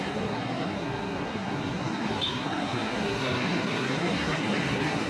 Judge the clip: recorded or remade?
remade